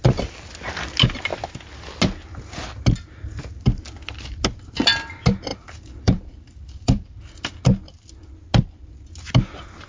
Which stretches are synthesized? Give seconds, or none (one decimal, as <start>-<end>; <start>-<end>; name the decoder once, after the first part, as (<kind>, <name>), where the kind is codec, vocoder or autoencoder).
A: 5.5-7.6 (vocoder, BigVGAN v2)